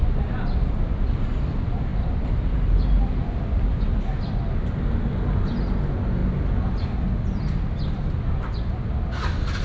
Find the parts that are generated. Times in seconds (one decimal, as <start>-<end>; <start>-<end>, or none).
none